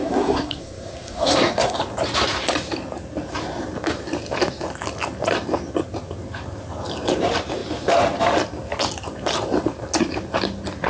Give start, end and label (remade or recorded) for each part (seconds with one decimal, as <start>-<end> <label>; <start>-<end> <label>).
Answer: 0.0-1.8 remade; 1.8-10.9 recorded